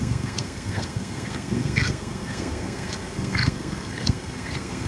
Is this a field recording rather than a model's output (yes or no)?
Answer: no